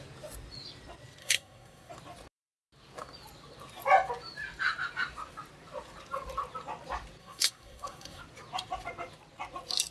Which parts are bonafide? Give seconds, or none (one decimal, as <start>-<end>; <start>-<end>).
0.0-1.2; 1.9-7.2; 8.2-9.9